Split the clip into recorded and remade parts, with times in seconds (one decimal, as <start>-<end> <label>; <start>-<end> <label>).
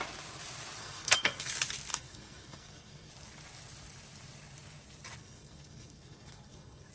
0.0-0.8 recorded; 0.8-1.5 remade; 1.5-1.9 recorded; 1.9-3.1 remade; 3.1-5.2 recorded; 5.2-6.9 remade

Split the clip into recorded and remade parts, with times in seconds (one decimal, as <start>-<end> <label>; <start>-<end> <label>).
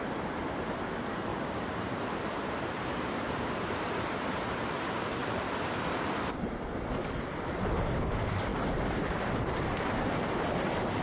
0.0-5.2 remade; 5.2-7.7 recorded; 7.7-11.0 remade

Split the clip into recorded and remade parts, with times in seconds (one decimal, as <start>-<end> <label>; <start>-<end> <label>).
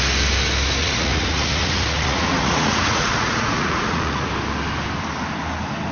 0.0-0.8 recorded; 0.8-4.3 remade; 4.3-5.9 recorded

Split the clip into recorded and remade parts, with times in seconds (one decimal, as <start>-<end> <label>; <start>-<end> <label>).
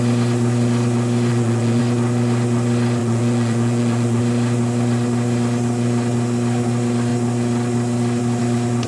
0.0-1.3 recorded; 1.3-1.8 remade; 1.8-3.0 recorded; 3.0-4.2 remade; 4.2-8.9 recorded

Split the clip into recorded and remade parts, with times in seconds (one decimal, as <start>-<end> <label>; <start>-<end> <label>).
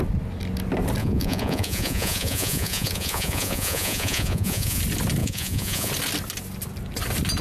0.0-1.0 recorded; 1.0-4.8 remade; 4.8-5.2 recorded; 5.2-5.9 remade; 5.9-7.4 recorded